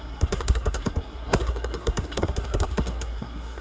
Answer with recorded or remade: remade